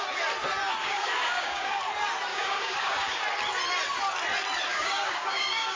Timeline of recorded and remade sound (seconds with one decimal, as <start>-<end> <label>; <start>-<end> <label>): 0.0-0.8 recorded; 0.8-1.8 remade; 1.8-2.3 recorded; 2.3-3.2 remade; 3.2-4.7 recorded; 4.7-5.8 remade